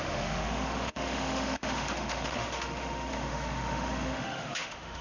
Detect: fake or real fake